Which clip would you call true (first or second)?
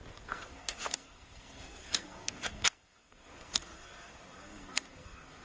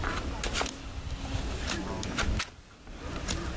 second